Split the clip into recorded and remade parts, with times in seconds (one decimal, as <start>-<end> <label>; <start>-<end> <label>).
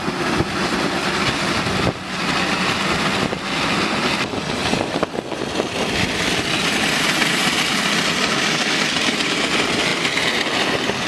0.0-11.1 recorded